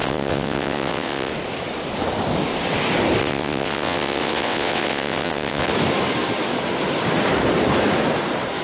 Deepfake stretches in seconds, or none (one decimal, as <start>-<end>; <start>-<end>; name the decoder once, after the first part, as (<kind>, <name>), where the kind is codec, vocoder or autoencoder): 0.0-1.3 (vocoder, WaveNeXt); 3.2-5.7